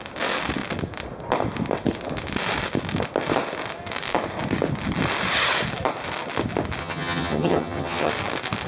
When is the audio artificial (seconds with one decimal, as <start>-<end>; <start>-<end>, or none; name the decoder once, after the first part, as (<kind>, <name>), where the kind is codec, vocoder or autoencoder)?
6.8-8.1 (vocoder, HiFi-GAN)